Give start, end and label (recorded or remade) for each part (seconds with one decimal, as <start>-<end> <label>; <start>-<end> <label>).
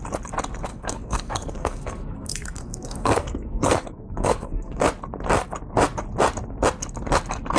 0.0-0.7 recorded; 0.7-4.8 remade; 4.8-7.6 recorded